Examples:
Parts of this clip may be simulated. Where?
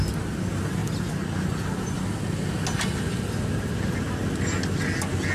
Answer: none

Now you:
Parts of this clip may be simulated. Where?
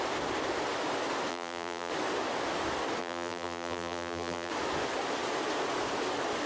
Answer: 1.3-1.9 (vocoder, BigVGAN v2); 3.0-4.5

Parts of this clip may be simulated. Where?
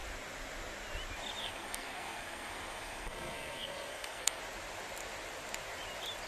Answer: 1.4-4.4 (codec, SNAC)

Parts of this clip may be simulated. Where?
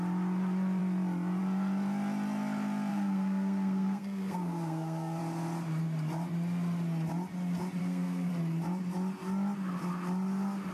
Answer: 2.9-5.2 (codec, SNAC); 7.8-8.3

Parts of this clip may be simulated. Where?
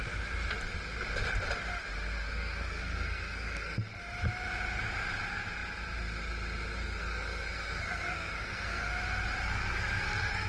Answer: 2.2-4.0 (codec, SNAC); 6.8-8.9; 9.4-10.5